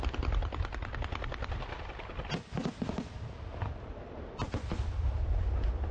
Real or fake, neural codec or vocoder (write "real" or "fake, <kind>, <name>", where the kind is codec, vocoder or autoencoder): real